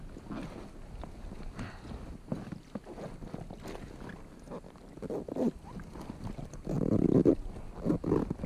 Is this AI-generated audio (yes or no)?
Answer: no